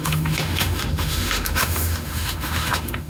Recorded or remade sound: remade